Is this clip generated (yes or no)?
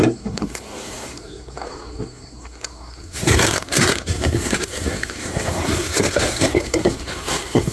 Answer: yes